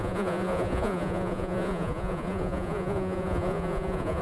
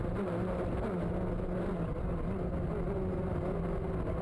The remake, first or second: first